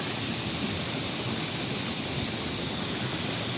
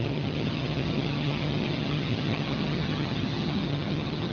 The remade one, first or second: second